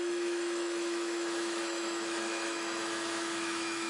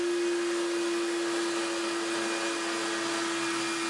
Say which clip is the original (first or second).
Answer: second